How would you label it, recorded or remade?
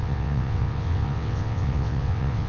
remade